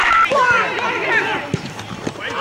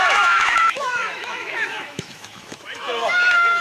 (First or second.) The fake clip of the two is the second